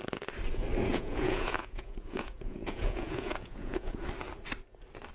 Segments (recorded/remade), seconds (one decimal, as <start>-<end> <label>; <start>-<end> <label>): 0.0-0.9 recorded; 0.9-4.0 remade; 4.0-5.1 recorded